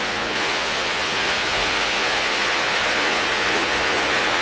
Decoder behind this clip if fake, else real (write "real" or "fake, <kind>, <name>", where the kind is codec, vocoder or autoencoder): fake, vocoder, Vocos